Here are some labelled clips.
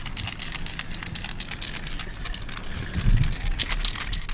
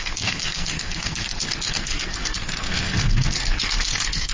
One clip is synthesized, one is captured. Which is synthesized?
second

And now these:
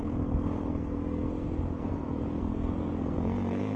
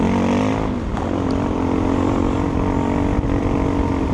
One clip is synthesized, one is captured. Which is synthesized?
first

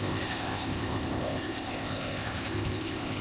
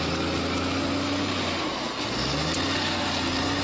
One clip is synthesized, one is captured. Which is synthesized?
first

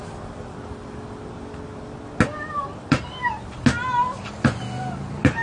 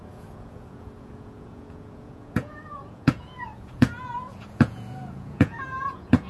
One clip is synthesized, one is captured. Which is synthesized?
second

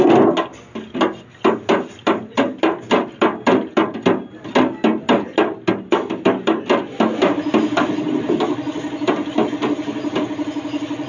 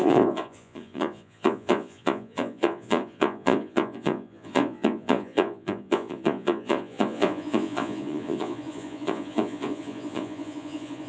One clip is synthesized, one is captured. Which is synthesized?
second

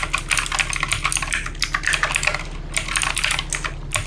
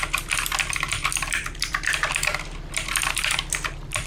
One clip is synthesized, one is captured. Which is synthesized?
second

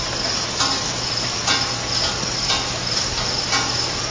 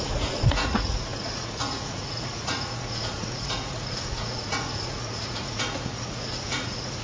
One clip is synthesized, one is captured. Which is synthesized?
second